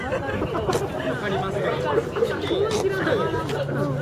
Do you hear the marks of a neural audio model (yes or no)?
no